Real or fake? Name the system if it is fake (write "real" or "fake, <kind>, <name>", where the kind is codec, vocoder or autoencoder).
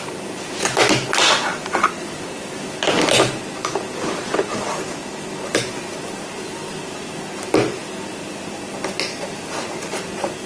real